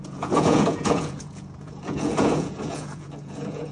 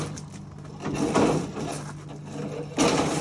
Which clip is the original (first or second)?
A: second